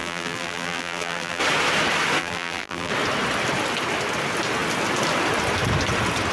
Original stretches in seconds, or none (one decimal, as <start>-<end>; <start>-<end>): 1.4-2.2; 2.9-6.3